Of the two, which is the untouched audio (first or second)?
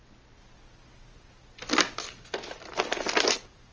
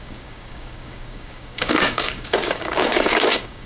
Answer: first